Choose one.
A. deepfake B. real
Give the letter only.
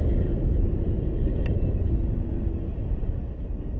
B